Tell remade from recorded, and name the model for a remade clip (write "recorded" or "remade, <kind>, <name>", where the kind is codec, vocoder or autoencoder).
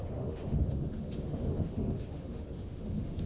remade, autoencoder, DAC-VAE